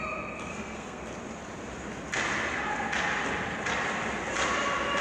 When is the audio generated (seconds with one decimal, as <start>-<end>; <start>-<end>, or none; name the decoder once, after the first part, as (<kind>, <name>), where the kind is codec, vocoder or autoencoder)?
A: 0.5-1.0 (codec, SNAC)